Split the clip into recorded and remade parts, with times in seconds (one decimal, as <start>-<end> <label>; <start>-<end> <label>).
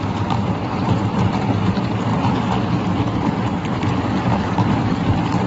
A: 0.0-5.5 remade